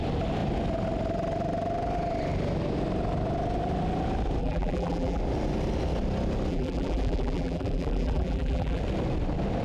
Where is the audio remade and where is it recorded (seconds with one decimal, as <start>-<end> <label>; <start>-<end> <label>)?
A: 0.0-4.4 recorded; 4.4-5.2 remade; 5.2-6.5 recorded; 6.5-8.8 remade; 8.8-9.6 recorded